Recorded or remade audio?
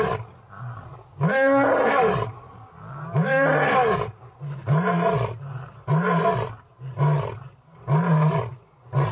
recorded